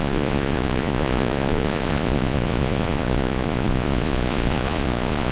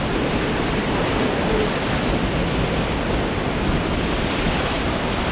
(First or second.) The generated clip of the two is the first